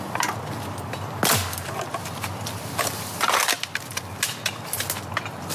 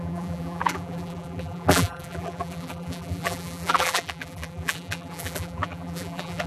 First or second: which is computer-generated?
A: second